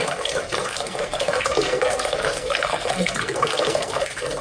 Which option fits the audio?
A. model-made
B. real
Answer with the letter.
A